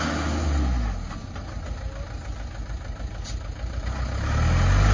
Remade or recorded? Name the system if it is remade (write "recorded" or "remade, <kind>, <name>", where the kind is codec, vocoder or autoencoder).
recorded